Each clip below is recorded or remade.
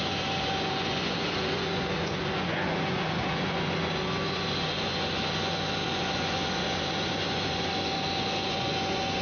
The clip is remade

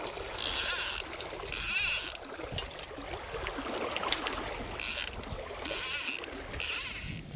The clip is recorded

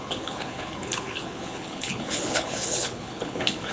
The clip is remade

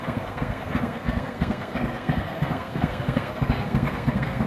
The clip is remade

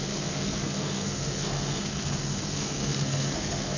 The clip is remade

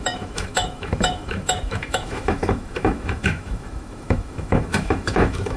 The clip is remade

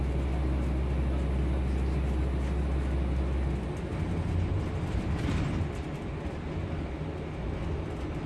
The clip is recorded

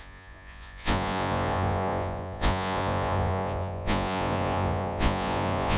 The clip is remade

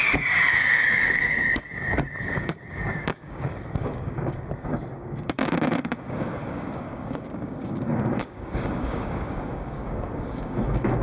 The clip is remade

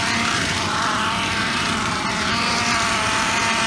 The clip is recorded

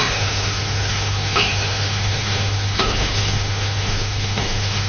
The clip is remade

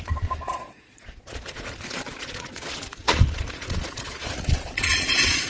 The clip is remade